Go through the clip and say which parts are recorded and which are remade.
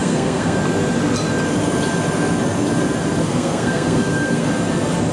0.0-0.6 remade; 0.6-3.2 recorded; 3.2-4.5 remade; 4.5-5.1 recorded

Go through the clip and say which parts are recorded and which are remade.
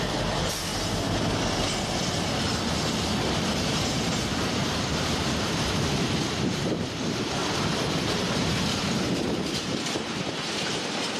0.0-0.7 remade; 0.7-3.7 recorded; 3.7-7.4 remade; 7.4-7.9 recorded; 7.9-11.2 remade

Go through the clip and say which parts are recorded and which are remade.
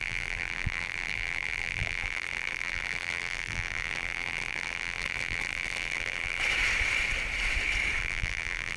0.0-6.4 remade; 6.4-8.0 recorded; 8.0-8.8 remade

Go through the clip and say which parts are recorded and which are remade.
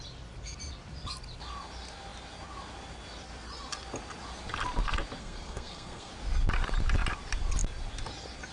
0.0-5.2 recorded; 5.2-6.1 remade; 6.1-8.5 recorded